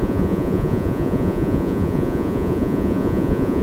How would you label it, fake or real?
fake